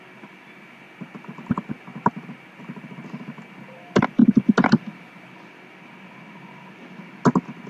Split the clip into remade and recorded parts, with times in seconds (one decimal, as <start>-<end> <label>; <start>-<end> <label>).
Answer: 0.0-7.7 recorded